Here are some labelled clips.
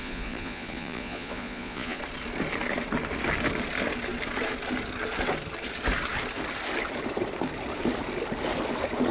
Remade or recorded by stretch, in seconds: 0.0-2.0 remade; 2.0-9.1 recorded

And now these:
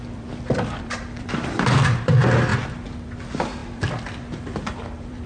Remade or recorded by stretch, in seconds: 0.0-2.5 remade; 2.5-3.2 recorded; 3.2-5.3 remade

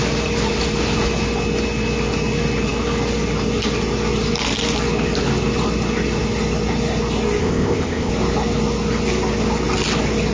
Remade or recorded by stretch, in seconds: 0.0-7.4 recorded; 7.4-8.1 remade; 8.1-10.3 recorded

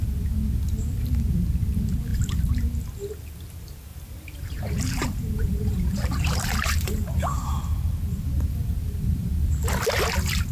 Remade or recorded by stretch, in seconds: 0.0-3.9 recorded; 3.9-7.6 remade; 7.6-10.5 recorded